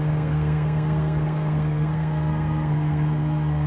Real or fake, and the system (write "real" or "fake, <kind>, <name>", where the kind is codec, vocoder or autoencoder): fake, codec, SNAC